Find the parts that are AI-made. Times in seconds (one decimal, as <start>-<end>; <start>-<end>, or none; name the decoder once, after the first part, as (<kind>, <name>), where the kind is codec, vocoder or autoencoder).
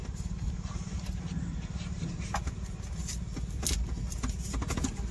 0.0-2.9 (vocoder, BigVGAN v2)